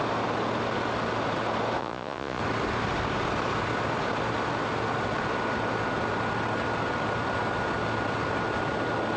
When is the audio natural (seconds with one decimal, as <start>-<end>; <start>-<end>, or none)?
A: 0.0-1.8; 2.4-9.2